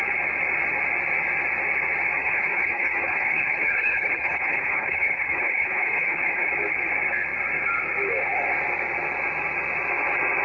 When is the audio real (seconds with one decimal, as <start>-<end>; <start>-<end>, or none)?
0.0-2.2; 6.5-10.4